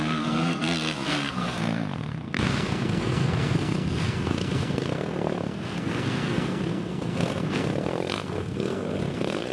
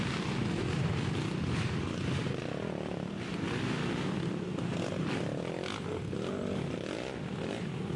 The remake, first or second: first